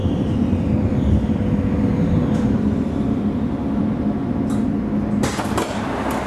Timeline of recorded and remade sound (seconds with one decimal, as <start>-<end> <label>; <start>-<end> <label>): 0.0-3.8 remade; 3.8-5.2 recorded; 5.2-5.7 remade; 5.7-6.3 recorded